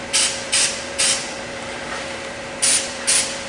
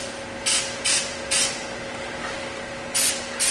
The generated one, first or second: first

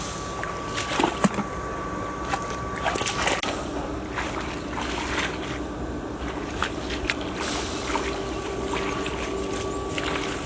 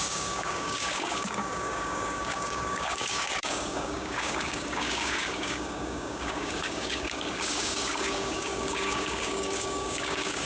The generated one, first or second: second